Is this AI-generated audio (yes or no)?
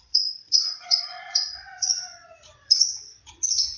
yes